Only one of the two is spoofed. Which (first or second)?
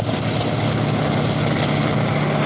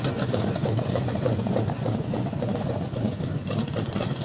second